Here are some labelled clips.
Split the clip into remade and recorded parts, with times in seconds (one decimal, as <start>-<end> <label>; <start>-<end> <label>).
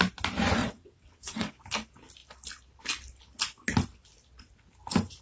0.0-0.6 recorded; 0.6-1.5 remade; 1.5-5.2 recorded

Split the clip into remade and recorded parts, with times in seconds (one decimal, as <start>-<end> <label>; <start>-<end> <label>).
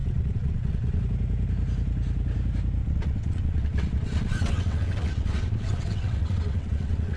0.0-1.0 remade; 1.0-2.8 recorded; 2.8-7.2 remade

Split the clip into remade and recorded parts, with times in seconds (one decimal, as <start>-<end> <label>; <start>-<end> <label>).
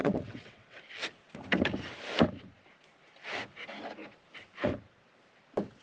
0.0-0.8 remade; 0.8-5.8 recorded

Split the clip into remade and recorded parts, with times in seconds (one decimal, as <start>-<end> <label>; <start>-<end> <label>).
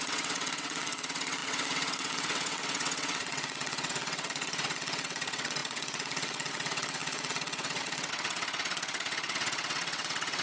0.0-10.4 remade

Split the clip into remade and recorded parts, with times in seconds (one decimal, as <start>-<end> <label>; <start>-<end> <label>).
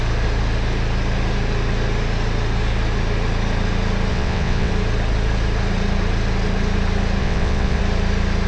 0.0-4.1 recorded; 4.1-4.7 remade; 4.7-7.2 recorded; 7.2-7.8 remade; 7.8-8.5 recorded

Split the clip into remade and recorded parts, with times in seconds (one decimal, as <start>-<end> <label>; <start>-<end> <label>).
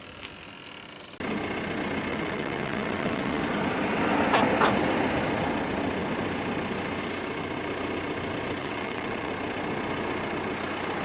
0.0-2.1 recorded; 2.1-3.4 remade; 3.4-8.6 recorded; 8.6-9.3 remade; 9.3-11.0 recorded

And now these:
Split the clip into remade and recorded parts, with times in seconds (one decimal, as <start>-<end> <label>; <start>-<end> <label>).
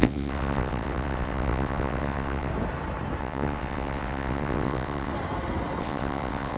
0.0-2.5 remade; 2.5-3.2 recorded; 3.2-5.1 remade; 5.1-5.8 recorded; 5.8-6.6 remade